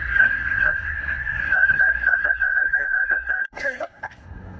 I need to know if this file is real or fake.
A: fake